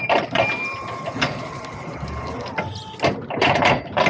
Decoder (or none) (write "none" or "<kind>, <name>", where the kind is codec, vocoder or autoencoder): none